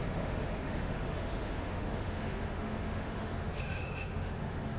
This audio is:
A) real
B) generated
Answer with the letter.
B